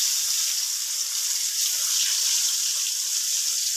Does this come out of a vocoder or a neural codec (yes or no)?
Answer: yes